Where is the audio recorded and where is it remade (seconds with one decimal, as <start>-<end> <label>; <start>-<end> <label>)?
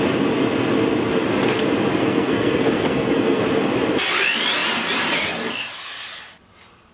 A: 0.0-2.0 recorded; 2.0-3.4 remade; 3.4-6.9 recorded